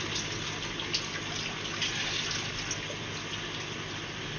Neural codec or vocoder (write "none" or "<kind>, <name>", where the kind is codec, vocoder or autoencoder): none